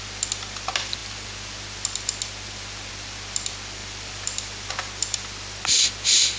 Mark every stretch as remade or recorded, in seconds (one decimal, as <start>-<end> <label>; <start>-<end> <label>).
0.0-6.4 recorded